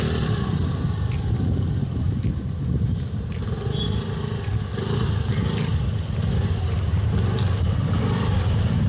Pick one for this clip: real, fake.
real